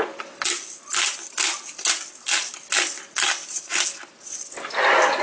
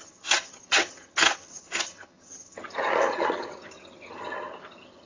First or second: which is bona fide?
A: first